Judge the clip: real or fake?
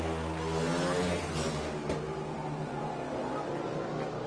real